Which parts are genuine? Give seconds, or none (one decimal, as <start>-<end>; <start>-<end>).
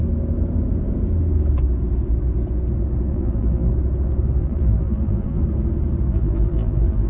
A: 0.0-3.1; 3.7-4.4; 5.4-6.1